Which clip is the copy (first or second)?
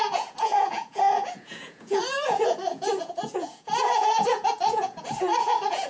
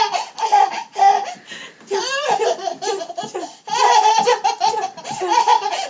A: first